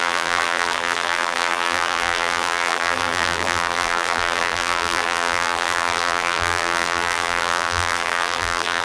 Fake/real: fake